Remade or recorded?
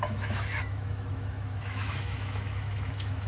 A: remade